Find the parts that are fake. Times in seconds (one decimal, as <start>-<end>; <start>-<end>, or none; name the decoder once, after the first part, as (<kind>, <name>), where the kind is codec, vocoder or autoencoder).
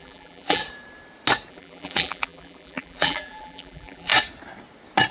0.0-0.6 (vocoder, BigVGAN v2); 1.5-4.1